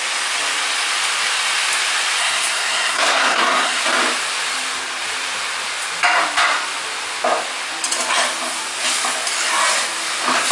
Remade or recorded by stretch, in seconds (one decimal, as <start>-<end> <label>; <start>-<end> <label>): 0.0-2.2 recorded; 2.2-3.8 remade; 3.8-10.5 recorded